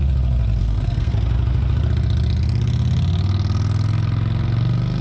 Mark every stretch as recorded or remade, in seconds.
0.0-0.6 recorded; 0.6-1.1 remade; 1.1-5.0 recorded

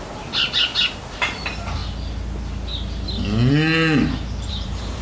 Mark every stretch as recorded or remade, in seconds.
0.0-0.7 remade; 0.7-1.2 recorded; 1.2-1.8 remade; 1.8-4.5 recorded; 4.5-5.0 remade

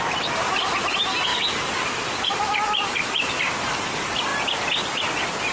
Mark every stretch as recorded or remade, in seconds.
0.0-5.5 recorded

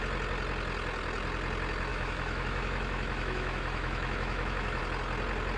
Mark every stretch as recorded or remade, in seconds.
0.0-1.9 recorded; 1.9-4.8 remade; 4.8-5.6 recorded

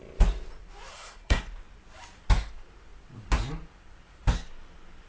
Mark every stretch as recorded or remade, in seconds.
0.0-0.9 recorded; 0.9-1.5 remade; 1.5-5.1 recorded